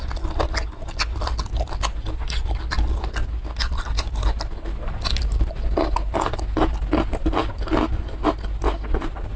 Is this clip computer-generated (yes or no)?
no